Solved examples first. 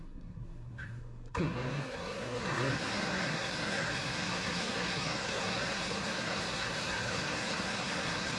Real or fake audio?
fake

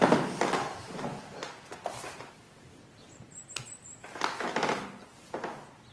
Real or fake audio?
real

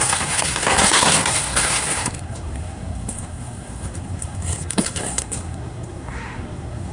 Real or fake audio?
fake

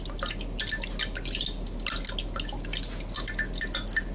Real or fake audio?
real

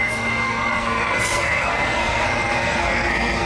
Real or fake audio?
fake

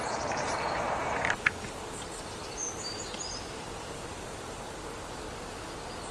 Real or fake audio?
real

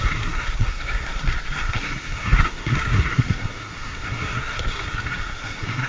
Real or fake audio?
fake